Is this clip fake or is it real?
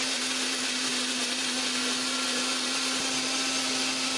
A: real